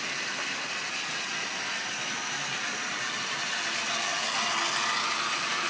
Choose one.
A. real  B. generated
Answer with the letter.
A